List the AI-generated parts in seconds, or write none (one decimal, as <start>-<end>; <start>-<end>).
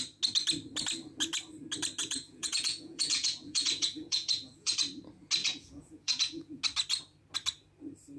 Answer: 2.0-4.7; 5.4-6.6